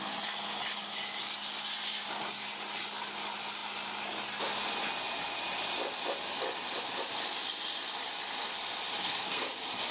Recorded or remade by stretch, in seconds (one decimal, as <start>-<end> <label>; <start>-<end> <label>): 0.0-9.0 recorded; 9.0-9.5 remade; 9.5-9.9 recorded

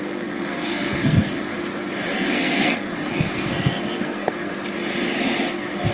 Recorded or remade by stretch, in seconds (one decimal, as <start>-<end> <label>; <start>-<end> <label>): 0.0-1.5 remade; 1.5-2.1 recorded; 2.1-4.5 remade; 4.5-5.5 recorded; 5.5-5.9 remade

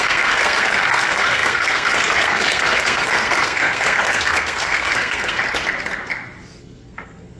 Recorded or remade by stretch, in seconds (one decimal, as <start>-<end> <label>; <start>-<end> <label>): 0.0-5.4 remade; 5.4-6.6 recorded; 6.6-7.4 remade

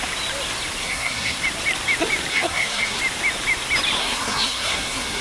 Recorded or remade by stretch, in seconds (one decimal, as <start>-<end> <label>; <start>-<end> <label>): 0.0-0.8 recorded; 0.8-1.4 remade; 1.4-2.3 recorded; 2.3-3.0 remade; 3.0-4.0 recorded; 4.0-5.2 remade

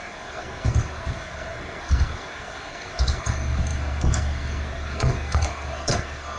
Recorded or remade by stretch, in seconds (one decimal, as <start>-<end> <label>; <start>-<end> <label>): 0.0-6.4 remade